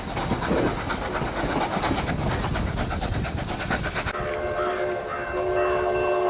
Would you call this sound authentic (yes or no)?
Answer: yes